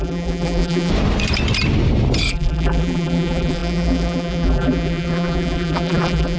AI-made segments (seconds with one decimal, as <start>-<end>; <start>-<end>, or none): 0.0-0.9; 2.3-6.4